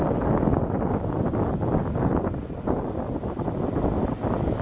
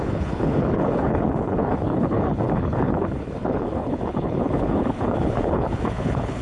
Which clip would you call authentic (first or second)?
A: first